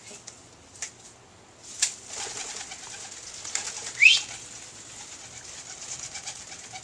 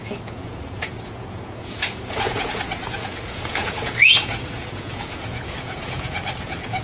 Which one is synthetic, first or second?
second